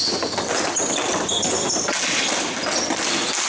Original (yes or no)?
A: yes